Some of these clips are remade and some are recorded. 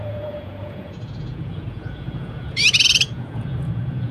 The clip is remade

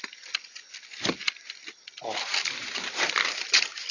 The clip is recorded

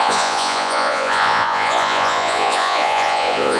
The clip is remade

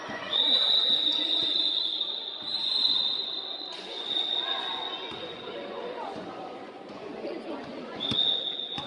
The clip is remade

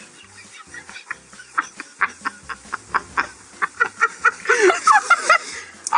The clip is recorded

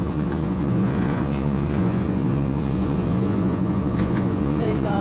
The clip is remade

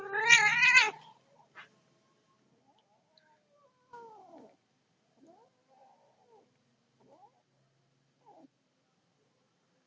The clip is recorded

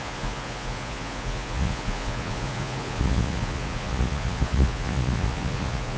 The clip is remade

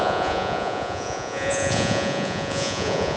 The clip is remade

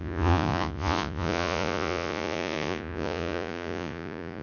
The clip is remade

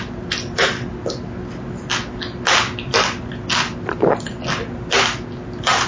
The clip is recorded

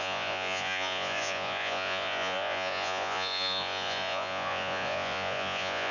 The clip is remade